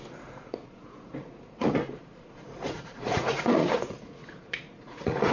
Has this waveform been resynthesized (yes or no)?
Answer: yes